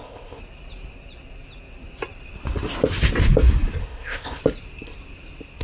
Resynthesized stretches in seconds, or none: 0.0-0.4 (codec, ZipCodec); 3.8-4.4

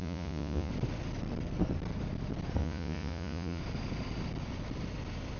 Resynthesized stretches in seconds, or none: 0.0-0.7 (vocoder, Vocos); 2.6-3.6

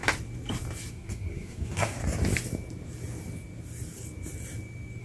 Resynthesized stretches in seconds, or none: 0.9-2.0 (codec, SNAC)